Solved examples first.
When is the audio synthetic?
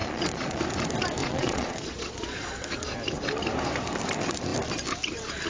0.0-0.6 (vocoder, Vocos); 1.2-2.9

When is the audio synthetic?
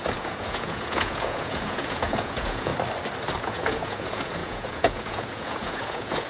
0.0-2.7 (vocoder, Vocos); 3.4-6.3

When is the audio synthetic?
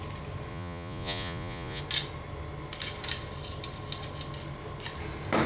0.5-1.8 (vocoder, Vocos)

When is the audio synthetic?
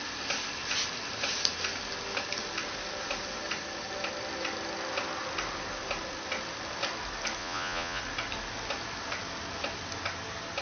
7.4-8.0 (vocoder, Vocos)